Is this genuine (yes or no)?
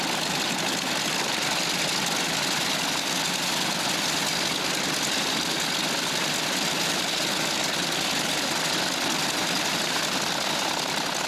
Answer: yes